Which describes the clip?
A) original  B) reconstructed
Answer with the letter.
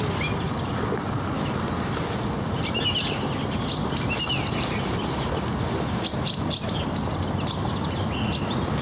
A